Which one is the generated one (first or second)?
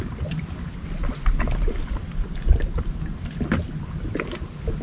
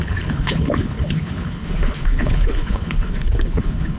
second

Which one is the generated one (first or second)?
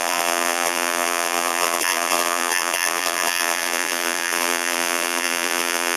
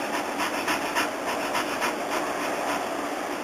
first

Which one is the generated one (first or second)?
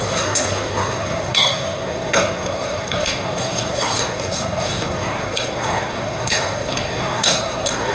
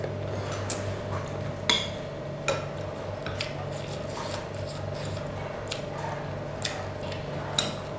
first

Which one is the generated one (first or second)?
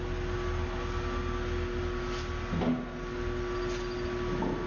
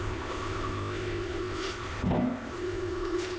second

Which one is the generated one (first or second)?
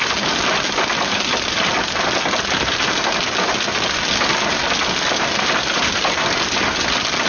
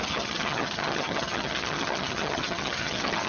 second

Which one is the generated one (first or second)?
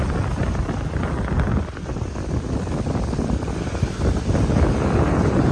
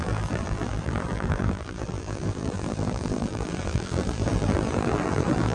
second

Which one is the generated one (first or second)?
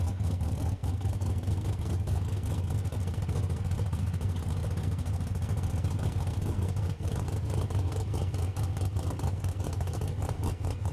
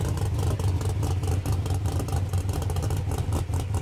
first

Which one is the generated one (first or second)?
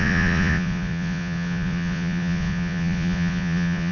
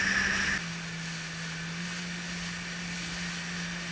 first